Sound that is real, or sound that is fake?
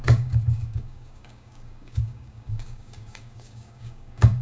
fake